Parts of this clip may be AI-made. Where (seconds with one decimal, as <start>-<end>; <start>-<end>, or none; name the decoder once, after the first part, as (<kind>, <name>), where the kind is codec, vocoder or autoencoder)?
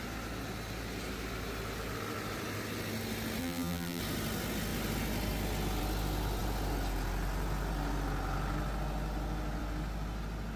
3.4-4.0 (vocoder, BigVGAN v2)